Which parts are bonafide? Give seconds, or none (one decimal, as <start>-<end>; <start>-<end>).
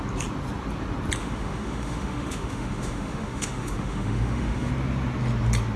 0.0-1.2; 4.7-5.8